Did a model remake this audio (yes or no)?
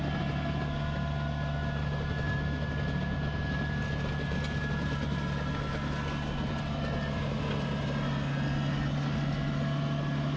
no